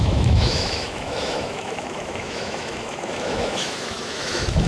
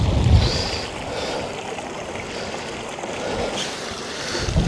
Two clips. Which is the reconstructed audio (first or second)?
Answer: first